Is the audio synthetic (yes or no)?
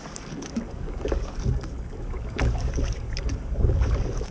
yes